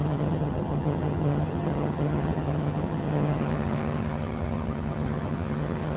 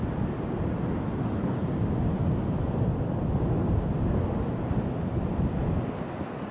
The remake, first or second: first